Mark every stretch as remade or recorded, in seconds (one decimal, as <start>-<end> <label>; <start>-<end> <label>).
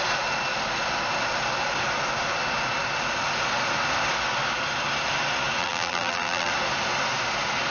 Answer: 0.0-5.6 recorded; 5.6-6.5 remade; 6.5-7.7 recorded